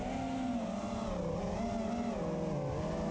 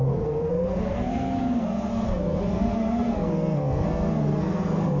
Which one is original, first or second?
first